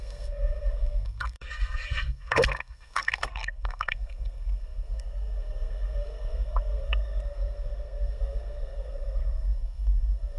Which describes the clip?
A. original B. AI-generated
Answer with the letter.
B